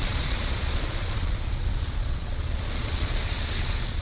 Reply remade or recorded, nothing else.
remade